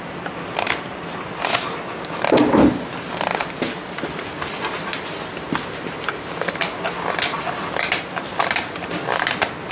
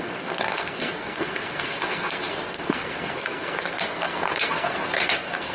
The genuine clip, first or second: first